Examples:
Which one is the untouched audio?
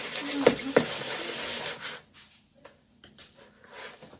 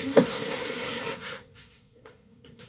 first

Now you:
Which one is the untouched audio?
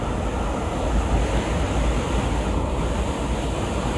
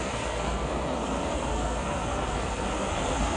first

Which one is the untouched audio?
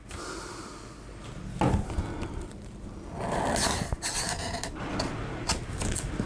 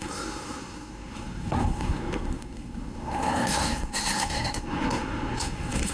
first